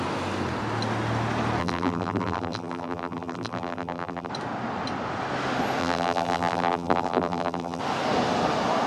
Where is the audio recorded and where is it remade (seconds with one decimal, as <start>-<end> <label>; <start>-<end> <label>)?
0.0-1.6 recorded; 1.6-4.3 remade; 4.3-5.8 recorded; 5.8-7.8 remade; 7.8-8.9 recorded